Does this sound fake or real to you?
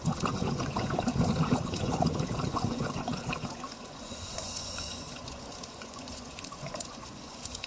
fake